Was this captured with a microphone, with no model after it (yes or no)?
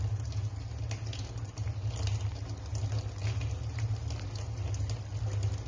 yes